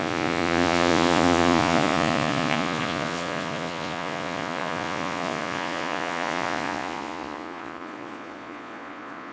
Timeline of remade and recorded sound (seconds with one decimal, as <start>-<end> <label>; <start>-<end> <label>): 0.0-9.3 remade